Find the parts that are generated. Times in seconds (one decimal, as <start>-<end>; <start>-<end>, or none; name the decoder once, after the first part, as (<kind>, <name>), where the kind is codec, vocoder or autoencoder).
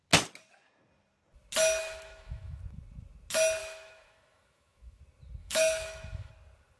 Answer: 1.8-2.6 (autoencoder, DAC-VAE); 3.6-5.0; 5.4-6.3